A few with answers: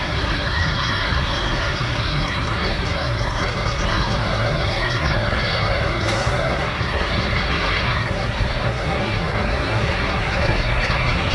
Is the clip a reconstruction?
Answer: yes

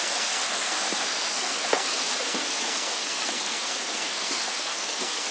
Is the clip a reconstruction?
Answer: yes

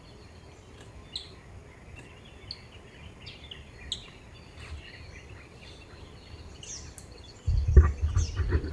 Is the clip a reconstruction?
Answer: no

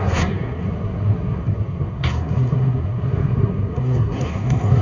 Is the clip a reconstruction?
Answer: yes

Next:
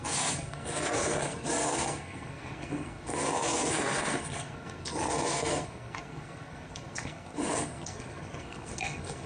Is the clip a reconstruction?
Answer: yes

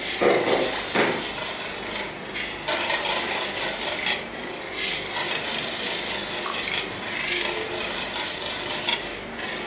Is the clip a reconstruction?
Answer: no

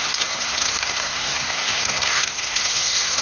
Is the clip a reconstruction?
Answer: yes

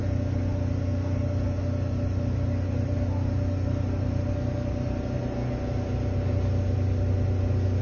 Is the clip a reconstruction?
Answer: no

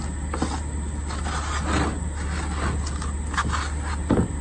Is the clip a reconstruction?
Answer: no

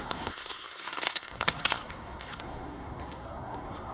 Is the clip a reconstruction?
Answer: yes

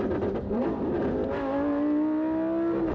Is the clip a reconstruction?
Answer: no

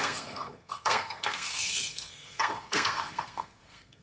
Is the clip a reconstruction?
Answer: yes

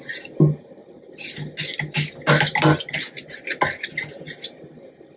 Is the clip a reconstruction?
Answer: no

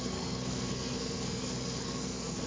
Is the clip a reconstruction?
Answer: yes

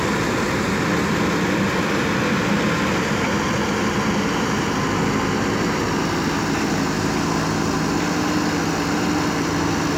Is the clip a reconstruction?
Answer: no